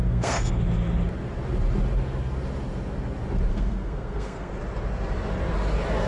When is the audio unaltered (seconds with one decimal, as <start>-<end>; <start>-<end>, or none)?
0.6-3.5; 4.5-6.1